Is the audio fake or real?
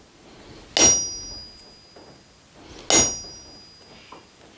real